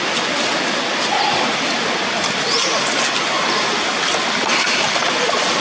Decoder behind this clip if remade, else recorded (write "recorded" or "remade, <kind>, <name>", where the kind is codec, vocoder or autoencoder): recorded